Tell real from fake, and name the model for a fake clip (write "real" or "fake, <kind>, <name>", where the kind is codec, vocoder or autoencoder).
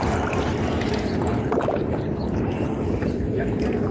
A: fake, vocoder, BigVGAN v2